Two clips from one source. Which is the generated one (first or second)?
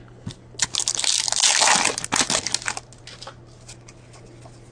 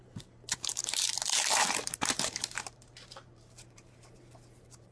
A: second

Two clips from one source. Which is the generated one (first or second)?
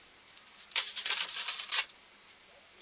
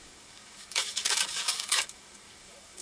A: second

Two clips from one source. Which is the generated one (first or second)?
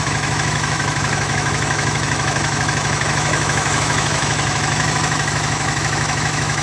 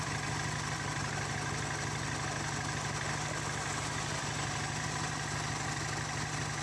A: first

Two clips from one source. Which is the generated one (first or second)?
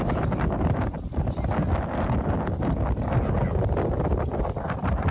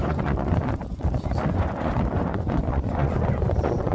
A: second